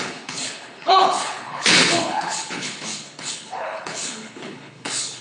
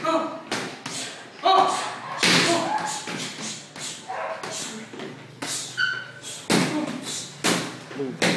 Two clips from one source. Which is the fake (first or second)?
first